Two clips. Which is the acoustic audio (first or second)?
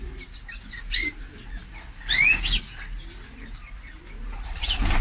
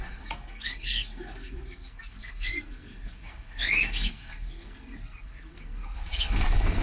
first